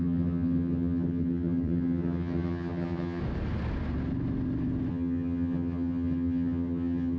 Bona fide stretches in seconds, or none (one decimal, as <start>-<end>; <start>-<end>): 3.2-4.9